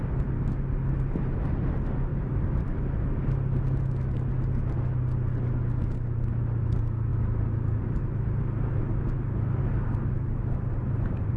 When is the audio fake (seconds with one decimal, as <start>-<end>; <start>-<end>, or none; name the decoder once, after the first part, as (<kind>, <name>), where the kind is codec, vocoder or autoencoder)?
none